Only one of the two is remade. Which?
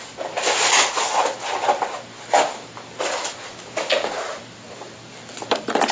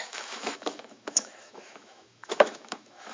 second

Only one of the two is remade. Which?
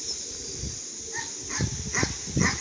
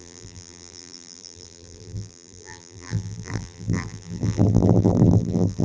second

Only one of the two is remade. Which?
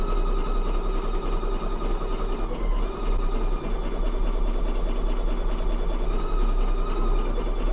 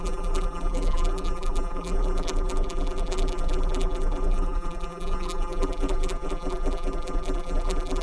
second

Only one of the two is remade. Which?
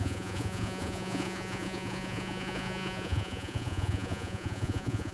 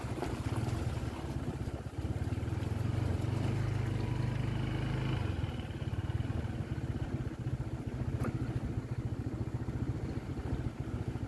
first